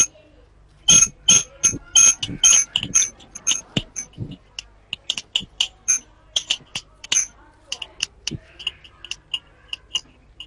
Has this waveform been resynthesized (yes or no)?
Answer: no